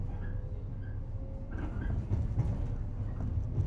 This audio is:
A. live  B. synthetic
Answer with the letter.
A